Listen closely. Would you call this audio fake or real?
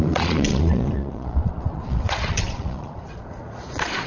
fake